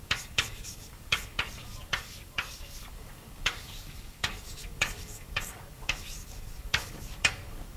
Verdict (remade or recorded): remade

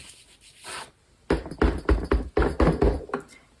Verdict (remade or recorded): recorded